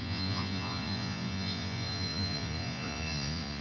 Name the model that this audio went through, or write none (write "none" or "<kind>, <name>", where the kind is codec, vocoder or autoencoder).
vocoder, Vocos